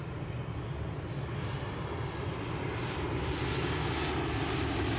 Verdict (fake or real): real